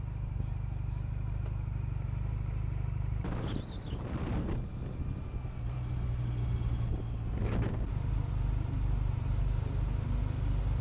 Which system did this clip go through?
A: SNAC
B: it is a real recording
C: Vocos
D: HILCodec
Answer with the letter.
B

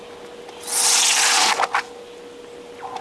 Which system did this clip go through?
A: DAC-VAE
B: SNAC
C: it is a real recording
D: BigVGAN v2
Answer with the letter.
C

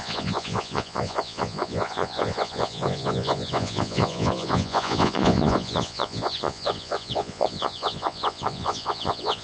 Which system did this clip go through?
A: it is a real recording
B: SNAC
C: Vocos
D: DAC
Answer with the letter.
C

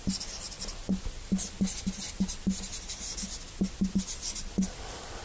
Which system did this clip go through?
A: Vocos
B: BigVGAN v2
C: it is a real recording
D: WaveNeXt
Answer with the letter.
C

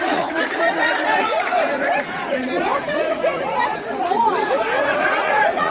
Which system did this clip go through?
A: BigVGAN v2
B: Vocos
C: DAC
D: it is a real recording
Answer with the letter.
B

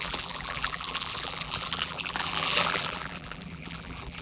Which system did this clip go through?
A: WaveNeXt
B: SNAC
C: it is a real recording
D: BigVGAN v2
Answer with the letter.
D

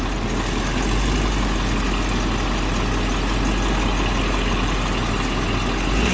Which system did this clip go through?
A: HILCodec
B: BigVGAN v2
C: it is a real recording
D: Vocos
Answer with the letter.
C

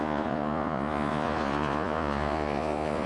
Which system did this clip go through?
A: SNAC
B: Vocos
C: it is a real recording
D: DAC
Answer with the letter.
B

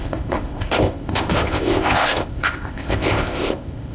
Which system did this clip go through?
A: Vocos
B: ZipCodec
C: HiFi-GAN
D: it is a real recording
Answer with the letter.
B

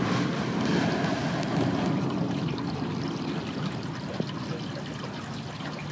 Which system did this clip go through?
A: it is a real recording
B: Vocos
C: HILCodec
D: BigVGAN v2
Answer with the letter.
A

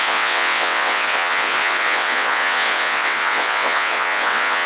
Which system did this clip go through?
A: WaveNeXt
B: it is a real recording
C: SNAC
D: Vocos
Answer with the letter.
A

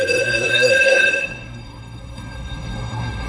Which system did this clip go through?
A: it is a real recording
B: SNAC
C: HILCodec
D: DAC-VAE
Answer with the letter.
B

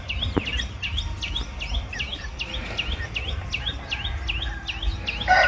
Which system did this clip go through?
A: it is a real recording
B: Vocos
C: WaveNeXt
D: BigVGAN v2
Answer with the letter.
A